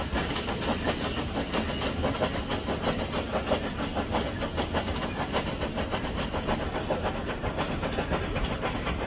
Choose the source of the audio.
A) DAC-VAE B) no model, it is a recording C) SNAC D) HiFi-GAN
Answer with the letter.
B